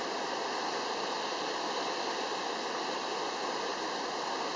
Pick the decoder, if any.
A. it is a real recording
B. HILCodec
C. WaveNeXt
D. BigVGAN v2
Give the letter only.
A